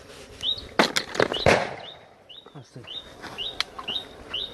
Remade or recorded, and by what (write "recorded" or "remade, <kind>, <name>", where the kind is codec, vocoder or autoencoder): recorded